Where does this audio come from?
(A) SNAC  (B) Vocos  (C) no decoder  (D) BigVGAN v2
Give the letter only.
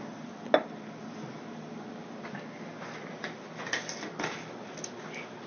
C